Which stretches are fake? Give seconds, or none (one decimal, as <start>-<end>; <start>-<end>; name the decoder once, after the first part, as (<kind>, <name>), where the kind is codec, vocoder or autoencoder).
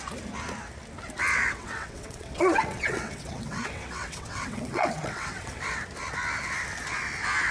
1.3-5.8 (vocoder, WaveNeXt)